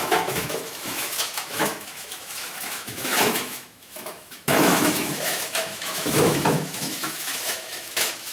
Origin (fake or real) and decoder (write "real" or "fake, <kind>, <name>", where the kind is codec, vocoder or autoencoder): fake, autoencoder, DAC-VAE